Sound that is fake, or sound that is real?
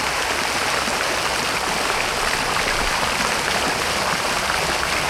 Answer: real